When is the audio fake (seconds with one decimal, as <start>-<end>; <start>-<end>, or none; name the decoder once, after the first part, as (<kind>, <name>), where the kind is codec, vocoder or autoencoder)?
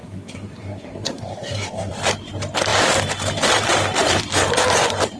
0.0-1.9 (codec, SNAC)